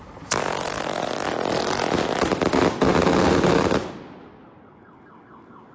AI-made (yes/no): no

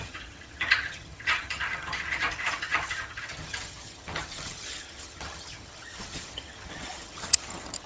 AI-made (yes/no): yes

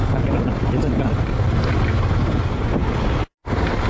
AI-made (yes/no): no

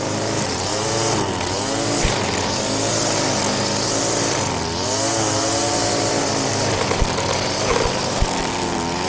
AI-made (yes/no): no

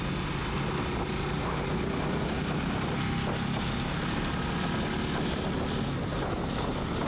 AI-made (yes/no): no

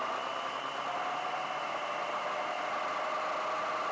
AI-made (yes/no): no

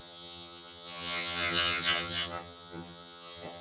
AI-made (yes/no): yes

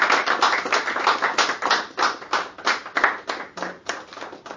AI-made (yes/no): no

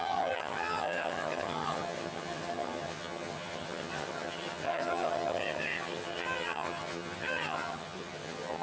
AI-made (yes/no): yes